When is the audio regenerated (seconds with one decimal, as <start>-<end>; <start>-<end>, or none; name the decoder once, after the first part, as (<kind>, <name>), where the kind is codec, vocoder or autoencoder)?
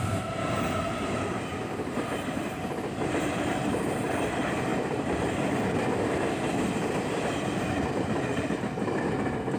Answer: none